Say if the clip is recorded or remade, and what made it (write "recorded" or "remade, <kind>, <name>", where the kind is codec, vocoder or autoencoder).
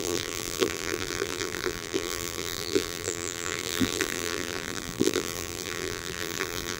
remade, vocoder, BigVGAN v2